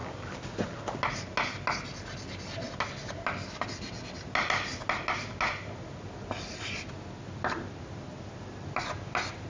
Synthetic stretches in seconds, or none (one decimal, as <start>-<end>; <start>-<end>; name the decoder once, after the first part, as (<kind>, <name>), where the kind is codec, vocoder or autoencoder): none